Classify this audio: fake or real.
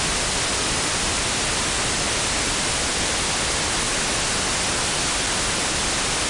real